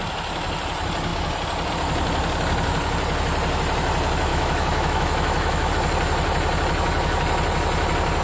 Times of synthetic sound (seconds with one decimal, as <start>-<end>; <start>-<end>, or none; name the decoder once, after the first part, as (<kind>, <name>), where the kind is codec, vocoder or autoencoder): 4.3-5.7 (autoencoder, DAC-VAE)